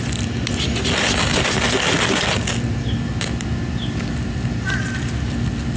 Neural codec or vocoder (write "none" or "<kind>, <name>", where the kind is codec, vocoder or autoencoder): none